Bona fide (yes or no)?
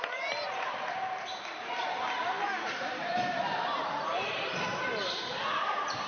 no